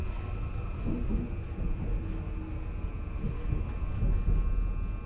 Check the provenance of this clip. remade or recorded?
recorded